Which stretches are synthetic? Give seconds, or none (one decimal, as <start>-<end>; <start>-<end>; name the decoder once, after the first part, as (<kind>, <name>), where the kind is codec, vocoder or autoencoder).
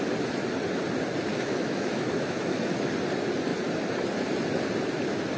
1.3-2.9 (autoencoder, DAC-VAE)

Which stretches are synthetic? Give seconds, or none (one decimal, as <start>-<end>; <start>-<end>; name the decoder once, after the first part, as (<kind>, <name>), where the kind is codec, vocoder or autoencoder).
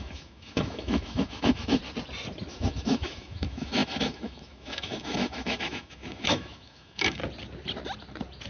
0.0-1.8 (autoencoder, DAC-VAE); 2.5-7.2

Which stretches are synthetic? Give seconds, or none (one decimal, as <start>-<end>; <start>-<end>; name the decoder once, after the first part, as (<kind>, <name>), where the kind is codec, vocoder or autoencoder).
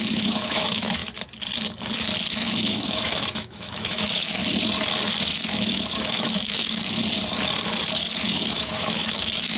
0.0-1.0 (autoencoder, DAC-VAE); 2.3-4.4; 5.3-7.0; 8.2-9.6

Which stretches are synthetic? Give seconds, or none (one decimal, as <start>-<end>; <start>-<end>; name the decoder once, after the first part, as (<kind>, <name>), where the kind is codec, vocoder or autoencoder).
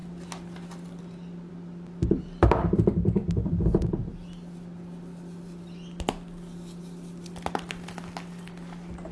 none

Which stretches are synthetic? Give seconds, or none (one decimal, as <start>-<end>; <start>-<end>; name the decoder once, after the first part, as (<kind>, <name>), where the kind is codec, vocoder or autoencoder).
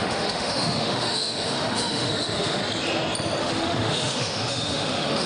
0.0-2.6 (autoencoder, DAC-VAE); 3.4-5.3